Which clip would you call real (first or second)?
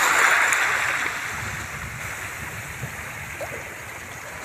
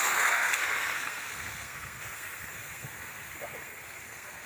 first